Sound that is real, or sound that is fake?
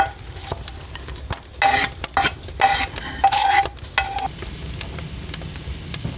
real